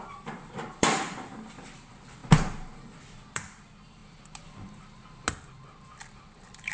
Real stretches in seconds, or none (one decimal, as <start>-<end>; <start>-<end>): 2.2-3.0; 4.0-5.5